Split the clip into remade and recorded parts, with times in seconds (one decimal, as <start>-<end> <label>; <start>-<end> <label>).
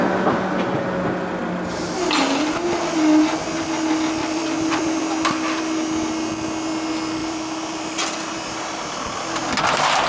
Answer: 0.0-4.2 recorded; 4.2-5.6 remade; 5.6-7.2 recorded; 7.2-8.5 remade; 8.5-10.1 recorded